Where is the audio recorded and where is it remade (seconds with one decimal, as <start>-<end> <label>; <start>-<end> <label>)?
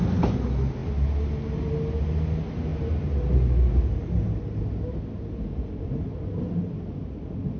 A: 0.0-7.6 recorded